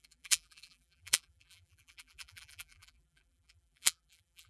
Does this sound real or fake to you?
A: fake